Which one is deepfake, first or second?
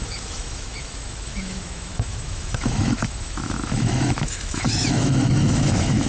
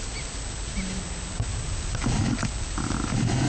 first